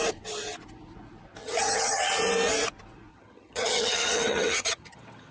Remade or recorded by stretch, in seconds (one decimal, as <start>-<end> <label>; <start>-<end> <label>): 0.0-1.4 recorded; 1.4-2.1 remade; 2.1-3.1 recorded; 3.1-5.3 remade